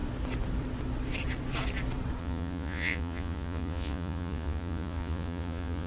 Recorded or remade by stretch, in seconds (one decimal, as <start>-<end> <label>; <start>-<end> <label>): 0.0-2.2 recorded; 2.2-5.9 remade